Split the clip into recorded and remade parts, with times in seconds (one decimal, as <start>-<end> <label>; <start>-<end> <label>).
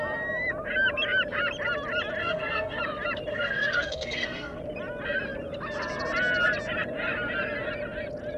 0.0-2.2 recorded; 2.2-2.8 remade; 2.8-3.3 recorded; 3.3-4.6 remade; 4.6-8.4 recorded